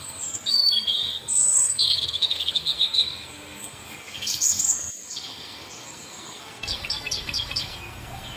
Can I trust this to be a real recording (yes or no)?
no